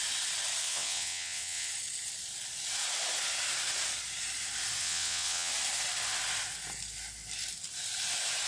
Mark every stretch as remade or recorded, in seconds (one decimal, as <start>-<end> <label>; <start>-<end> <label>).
0.0-0.6 recorded; 0.6-1.7 remade; 1.7-4.8 recorded; 4.8-5.5 remade; 5.5-8.5 recorded